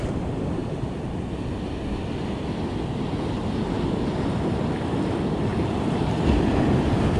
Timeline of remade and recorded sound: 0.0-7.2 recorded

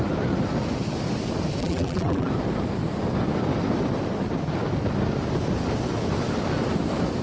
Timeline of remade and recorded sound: 0.0-1.6 recorded; 1.6-2.3 remade; 2.3-7.2 recorded